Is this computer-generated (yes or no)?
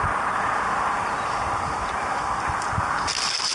no